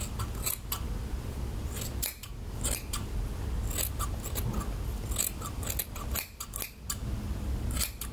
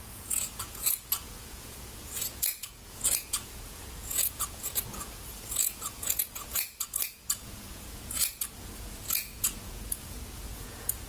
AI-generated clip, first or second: second